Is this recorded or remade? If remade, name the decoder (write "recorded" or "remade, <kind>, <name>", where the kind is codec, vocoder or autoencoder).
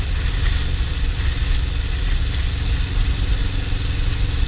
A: recorded